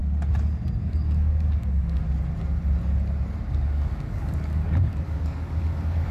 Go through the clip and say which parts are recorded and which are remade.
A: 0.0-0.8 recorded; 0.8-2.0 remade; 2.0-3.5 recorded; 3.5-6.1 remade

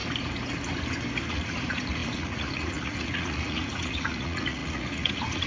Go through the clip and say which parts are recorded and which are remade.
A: 0.0-1.3 recorded; 1.3-5.5 remade

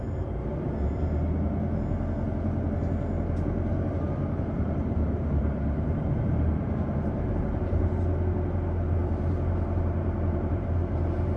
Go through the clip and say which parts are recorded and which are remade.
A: 0.0-3.7 recorded; 3.7-7.9 remade; 7.9-9.0 recorded; 9.0-11.4 remade

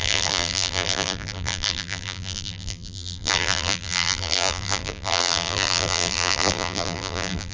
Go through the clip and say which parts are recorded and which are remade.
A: 0.0-7.5 remade

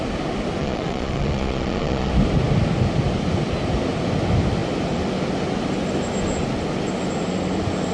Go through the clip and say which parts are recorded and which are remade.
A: 0.0-0.6 recorded; 0.6-2.1 remade; 2.1-7.9 recorded

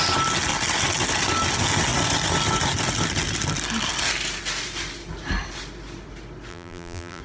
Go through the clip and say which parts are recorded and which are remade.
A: 0.0-6.5 recorded; 6.5-7.2 remade

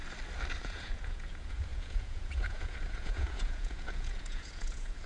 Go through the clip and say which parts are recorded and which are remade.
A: 0.0-0.6 recorded; 0.6-5.1 remade

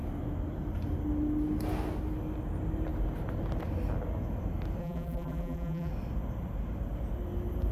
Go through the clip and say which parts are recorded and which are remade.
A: 0.0-4.8 recorded; 4.8-5.9 remade; 5.9-7.7 recorded